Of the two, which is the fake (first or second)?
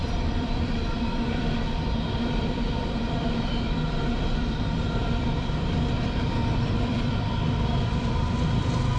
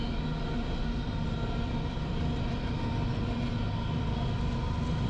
first